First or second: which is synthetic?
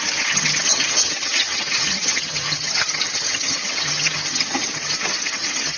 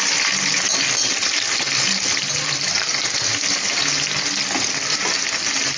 first